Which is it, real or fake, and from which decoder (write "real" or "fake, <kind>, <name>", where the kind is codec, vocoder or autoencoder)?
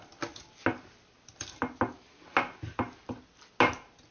real